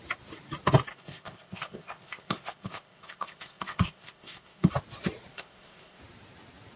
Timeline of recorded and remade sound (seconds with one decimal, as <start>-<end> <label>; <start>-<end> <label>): 0.0-0.9 recorded; 0.9-4.7 remade; 4.7-5.3 recorded; 5.3-6.0 remade; 6.0-6.8 recorded